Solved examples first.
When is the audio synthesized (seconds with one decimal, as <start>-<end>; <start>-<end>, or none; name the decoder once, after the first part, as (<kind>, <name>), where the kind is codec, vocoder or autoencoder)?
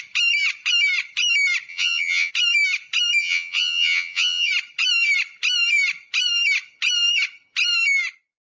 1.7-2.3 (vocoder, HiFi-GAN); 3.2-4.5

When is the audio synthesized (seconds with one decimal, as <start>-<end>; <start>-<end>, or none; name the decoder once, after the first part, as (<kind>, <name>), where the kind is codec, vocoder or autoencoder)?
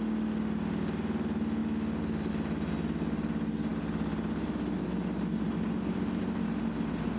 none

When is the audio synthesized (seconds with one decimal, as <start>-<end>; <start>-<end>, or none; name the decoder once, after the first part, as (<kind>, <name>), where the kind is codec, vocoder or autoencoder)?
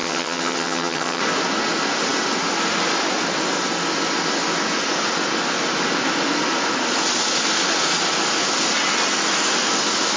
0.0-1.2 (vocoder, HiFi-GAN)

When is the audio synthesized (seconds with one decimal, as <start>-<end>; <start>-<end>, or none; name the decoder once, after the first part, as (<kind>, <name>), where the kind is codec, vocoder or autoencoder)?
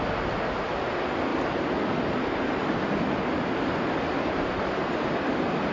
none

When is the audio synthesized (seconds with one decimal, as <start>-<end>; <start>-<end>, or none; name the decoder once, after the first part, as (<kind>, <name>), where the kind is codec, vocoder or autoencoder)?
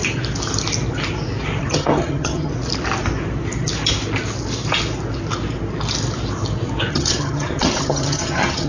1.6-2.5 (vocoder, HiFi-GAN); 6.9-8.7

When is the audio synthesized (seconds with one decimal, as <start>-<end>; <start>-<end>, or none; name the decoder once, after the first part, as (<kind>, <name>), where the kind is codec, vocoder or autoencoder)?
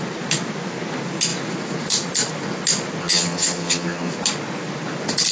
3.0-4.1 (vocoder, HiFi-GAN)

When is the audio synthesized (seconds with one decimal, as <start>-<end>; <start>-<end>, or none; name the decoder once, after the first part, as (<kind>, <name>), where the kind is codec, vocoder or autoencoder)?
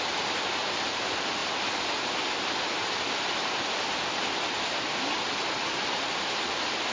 none